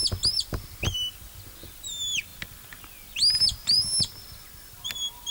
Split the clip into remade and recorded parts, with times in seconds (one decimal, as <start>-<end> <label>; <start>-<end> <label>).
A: 0.0-5.3 recorded